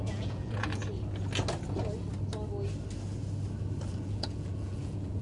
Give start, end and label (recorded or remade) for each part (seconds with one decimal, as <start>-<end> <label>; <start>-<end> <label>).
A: 0.0-0.8 remade; 0.8-3.9 recorded; 3.9-5.2 remade